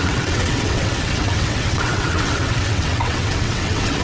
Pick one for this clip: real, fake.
fake